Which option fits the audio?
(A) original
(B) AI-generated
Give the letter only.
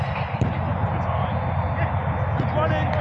A